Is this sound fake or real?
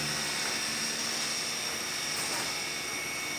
real